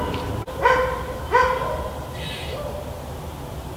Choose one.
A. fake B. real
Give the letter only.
B